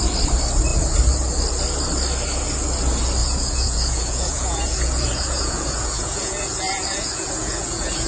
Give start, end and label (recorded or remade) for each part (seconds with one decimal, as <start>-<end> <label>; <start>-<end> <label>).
0.0-3.2 recorded; 3.2-8.1 remade